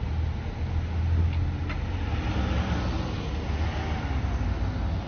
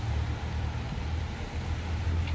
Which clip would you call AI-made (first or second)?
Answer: second